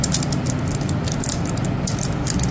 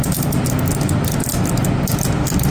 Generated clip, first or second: first